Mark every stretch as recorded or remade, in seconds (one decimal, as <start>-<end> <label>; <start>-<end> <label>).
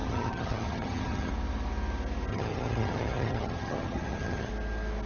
0.0-1.3 remade; 1.3-2.3 recorded; 2.3-4.5 remade; 4.5-5.1 recorded